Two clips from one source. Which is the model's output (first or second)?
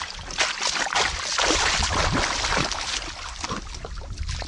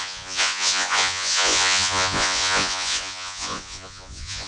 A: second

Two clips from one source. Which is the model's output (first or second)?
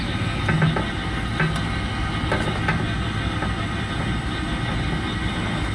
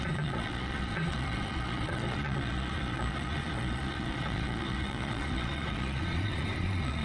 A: second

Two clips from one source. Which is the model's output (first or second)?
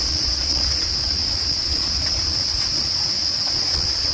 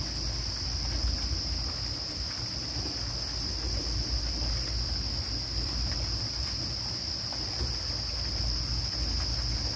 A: first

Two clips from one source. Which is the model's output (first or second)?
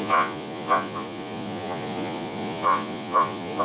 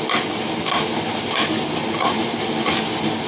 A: first